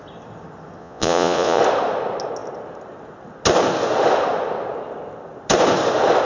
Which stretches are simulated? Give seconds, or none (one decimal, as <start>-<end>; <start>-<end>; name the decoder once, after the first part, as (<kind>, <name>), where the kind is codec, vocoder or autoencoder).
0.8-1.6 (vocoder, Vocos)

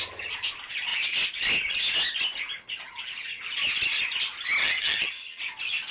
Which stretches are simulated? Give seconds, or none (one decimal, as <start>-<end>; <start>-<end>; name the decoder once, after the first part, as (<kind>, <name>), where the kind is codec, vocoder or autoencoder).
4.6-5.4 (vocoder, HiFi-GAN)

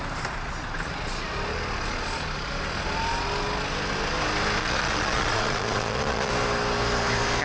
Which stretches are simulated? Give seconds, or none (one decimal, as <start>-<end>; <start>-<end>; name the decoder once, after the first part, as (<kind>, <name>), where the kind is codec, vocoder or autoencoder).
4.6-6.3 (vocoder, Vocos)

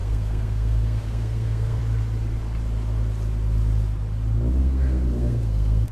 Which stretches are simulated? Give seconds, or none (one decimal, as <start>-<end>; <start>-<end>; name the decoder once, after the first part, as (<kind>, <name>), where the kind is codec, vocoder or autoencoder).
0.0-1.8 (codec, SNAC); 4.6-5.9